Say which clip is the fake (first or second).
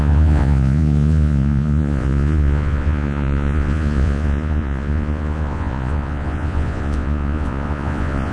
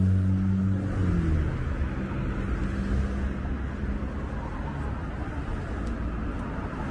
first